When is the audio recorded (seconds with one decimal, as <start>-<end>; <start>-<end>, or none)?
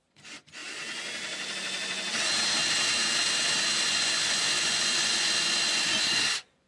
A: 0.6-3.8